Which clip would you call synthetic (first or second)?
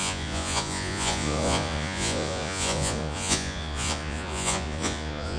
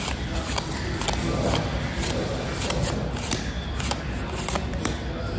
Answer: first